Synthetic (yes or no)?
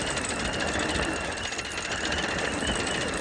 no